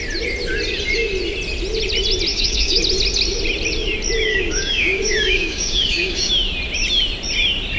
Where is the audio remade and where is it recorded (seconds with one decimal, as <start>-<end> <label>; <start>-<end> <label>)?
0.0-2.3 recorded; 2.3-2.8 remade; 2.8-4.3 recorded; 4.3-6.3 remade; 6.3-7.8 recorded